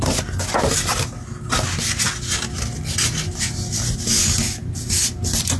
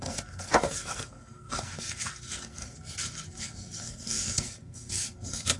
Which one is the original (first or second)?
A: first